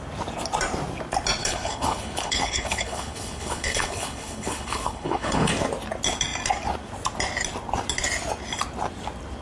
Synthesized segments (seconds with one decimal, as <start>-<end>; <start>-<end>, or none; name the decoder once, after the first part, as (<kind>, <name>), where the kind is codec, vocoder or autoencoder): 1.4-5.5 (codec, HILCodec)